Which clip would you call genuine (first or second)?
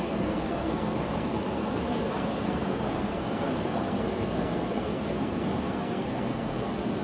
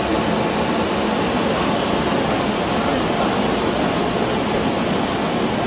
second